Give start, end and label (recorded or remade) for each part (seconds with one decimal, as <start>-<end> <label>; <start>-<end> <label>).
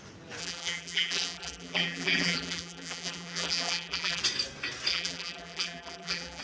0.0-0.4 recorded; 0.4-4.2 remade; 4.2-4.9 recorded; 4.9-6.4 remade